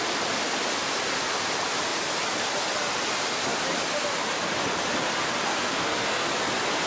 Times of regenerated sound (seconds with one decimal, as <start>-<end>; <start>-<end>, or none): 5.5-6.3